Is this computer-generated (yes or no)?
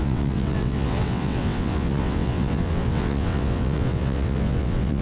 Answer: yes